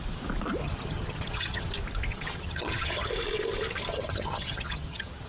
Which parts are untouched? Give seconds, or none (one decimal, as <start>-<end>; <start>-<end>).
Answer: 0.0-0.6; 1.7-2.1; 3.1-3.9